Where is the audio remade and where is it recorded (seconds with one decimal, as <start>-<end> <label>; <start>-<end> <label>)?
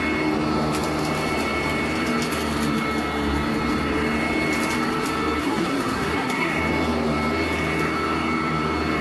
0.0-5.4 recorded; 5.4-6.6 remade; 6.6-9.0 recorded